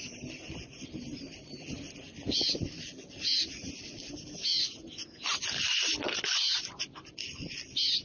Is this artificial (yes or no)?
yes